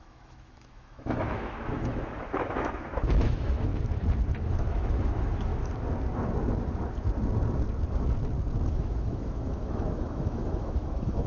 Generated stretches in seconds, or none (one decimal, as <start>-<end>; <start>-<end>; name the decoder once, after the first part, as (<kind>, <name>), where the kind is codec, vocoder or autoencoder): 0.0-3.7 (autoencoder, DAC-VAE); 4.3-5.5; 8.7-11.3